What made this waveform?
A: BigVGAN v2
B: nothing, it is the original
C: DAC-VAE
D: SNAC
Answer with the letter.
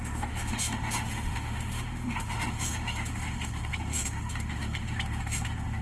C